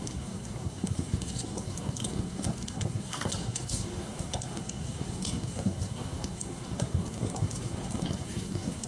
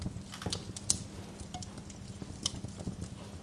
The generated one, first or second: first